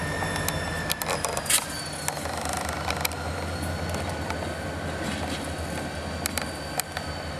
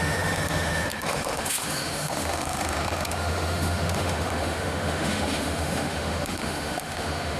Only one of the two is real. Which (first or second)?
first